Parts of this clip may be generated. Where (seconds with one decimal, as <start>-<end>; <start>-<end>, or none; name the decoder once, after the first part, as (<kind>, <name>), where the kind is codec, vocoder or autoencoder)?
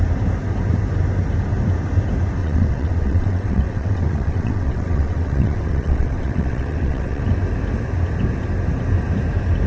2.4-7.2 (vocoder, WaveNeXt)